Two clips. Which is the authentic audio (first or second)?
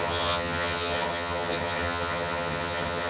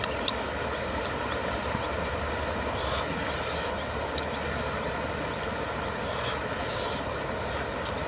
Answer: second